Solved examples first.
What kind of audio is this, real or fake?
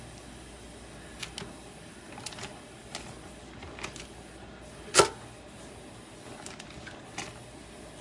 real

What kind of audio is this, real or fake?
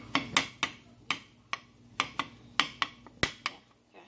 real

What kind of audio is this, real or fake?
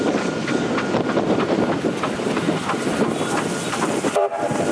real